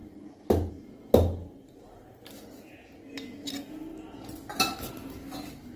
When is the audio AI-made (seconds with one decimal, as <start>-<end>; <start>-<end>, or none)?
none